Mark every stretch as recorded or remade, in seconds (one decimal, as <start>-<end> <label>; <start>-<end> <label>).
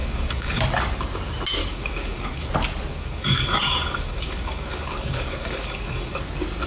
0.0-0.6 remade; 0.6-1.6 recorded; 1.6-2.5 remade; 2.5-2.9 recorded; 2.9-6.2 remade; 6.2-6.7 recorded